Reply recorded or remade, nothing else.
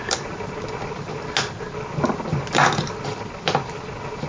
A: recorded